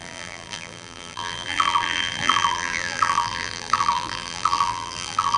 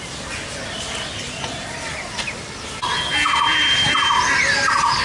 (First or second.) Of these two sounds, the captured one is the second